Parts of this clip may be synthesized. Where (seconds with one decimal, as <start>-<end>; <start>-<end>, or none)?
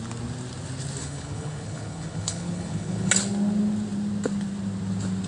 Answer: 1.0-3.1